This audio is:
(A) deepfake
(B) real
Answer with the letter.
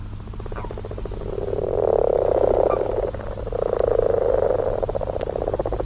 B